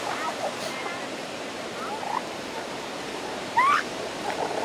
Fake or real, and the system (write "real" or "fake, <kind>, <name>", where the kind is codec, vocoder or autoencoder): fake, vocoder, BigVGAN v2